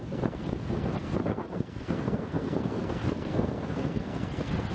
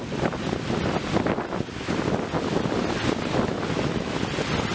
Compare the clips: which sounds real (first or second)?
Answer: second